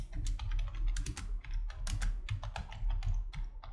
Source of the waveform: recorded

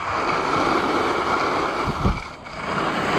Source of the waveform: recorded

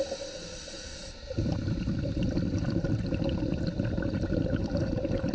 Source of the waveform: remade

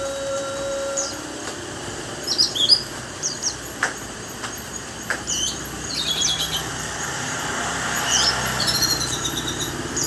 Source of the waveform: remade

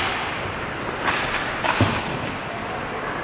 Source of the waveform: remade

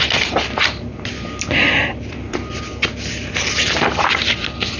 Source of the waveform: remade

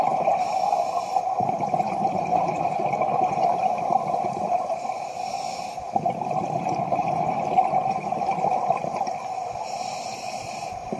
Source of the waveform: remade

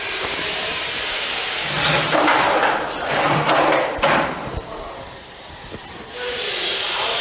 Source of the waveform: remade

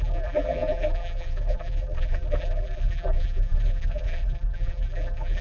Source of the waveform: remade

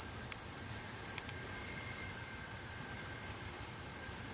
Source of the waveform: remade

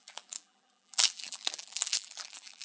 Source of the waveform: remade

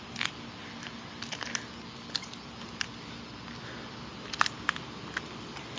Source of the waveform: recorded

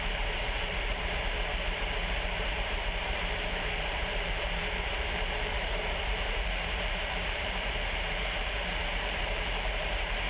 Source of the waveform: remade